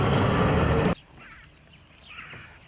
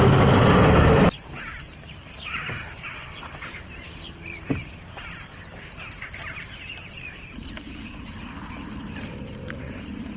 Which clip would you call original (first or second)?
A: first